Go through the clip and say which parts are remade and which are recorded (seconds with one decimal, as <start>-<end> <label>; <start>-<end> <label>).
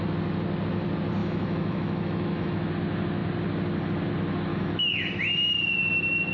0.0-1.2 recorded; 1.2-2.7 remade; 2.7-4.5 recorded; 4.5-5.1 remade; 5.1-6.3 recorded